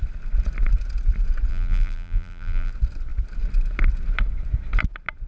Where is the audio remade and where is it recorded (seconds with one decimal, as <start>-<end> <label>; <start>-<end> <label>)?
0.0-1.5 recorded; 1.5-2.7 remade; 2.7-5.3 recorded